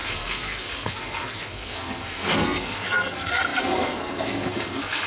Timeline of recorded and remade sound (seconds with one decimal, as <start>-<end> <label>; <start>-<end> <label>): 0.0-5.1 remade